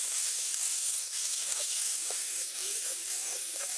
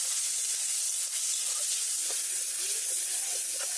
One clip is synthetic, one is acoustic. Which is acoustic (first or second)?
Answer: second